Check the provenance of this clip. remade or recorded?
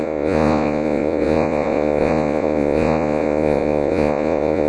remade